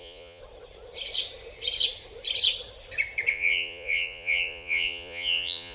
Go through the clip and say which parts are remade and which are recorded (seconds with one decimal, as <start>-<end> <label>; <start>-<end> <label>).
0.0-0.4 remade; 0.4-3.3 recorded; 3.3-5.7 remade